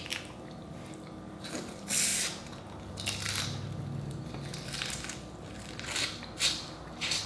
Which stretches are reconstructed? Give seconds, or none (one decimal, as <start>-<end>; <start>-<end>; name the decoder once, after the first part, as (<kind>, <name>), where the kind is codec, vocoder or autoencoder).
none